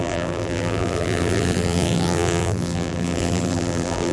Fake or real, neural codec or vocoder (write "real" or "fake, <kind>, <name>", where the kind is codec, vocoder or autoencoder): fake, vocoder, BigVGAN v2